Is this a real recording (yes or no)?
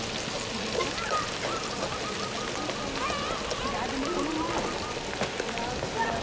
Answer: yes